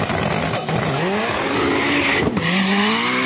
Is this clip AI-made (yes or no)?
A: no